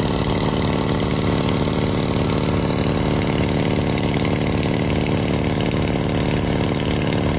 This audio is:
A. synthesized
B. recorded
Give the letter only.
B